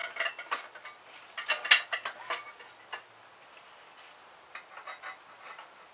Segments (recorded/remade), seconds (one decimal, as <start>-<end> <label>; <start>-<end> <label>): 0.0-5.9 recorded